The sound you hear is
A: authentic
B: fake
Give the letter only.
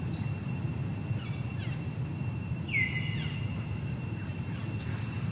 A